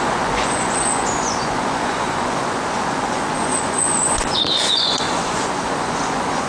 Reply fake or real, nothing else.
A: fake